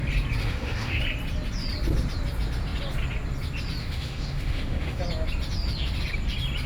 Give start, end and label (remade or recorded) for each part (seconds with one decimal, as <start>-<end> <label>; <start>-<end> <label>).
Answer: 0.0-0.4 recorded; 0.4-1.0 remade; 1.0-3.8 recorded; 3.8-5.0 remade; 5.0-6.7 recorded